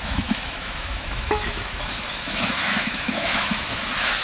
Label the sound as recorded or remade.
remade